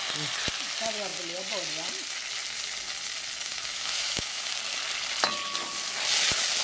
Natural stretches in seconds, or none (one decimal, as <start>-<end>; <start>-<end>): 0.0-3.5; 4.5-6.6